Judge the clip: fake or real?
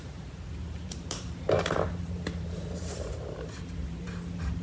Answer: fake